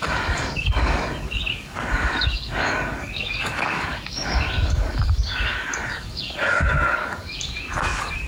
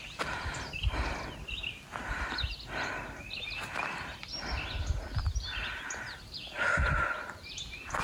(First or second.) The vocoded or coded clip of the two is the first